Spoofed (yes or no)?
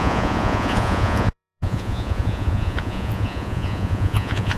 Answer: yes